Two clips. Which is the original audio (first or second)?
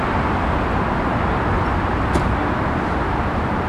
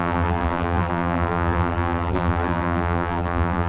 first